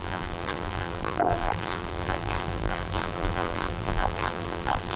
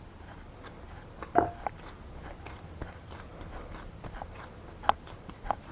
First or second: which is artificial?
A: first